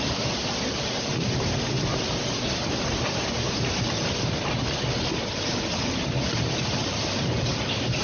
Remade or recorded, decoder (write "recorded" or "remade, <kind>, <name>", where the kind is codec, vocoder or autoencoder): remade, vocoder, BigVGAN v2